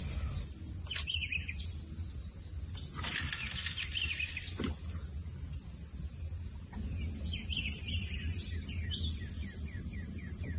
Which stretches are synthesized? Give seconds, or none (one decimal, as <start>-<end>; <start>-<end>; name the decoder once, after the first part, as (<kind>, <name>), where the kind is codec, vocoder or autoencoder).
none